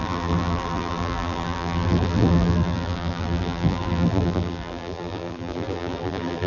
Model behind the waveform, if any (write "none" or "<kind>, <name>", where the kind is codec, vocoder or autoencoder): vocoder, BigVGAN v2